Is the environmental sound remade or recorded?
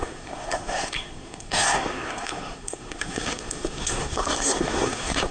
remade